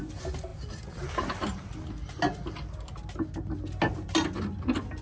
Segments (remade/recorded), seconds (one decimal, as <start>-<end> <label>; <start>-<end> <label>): 0.0-5.0 recorded

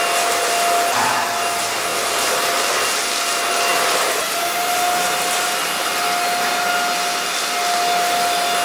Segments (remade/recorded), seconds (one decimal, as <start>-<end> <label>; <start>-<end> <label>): 0.0-8.6 recorded

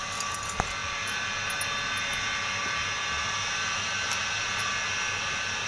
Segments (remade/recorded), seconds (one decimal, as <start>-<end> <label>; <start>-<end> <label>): 0.0-5.7 recorded

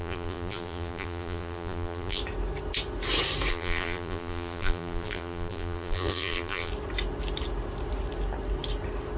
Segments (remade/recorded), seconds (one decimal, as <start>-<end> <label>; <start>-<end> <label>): 0.0-2.2 remade; 2.2-3.5 recorded; 3.5-6.7 remade; 6.7-9.2 recorded

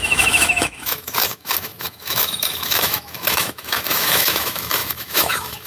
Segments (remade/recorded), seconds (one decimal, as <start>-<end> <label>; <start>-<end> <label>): 0.0-5.7 remade

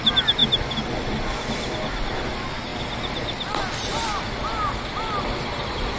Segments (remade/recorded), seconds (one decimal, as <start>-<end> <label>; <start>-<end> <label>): 0.0-6.0 recorded

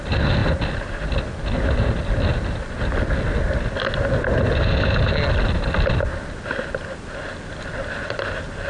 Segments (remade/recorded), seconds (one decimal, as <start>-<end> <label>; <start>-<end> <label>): 0.0-8.7 recorded